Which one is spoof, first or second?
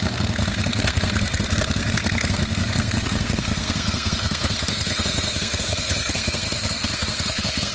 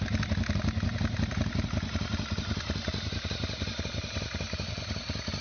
first